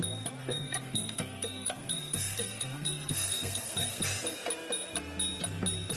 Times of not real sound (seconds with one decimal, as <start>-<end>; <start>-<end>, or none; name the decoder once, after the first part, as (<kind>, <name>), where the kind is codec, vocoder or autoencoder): 0.4-4.0 (codec, SNAC)